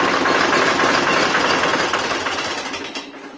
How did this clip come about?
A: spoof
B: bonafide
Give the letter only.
B